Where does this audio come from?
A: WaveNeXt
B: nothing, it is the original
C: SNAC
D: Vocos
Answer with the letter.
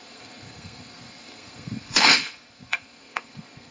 C